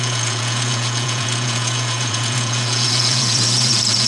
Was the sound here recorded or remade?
remade